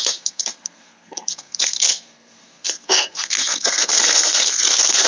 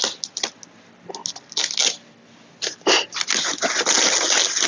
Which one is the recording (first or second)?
second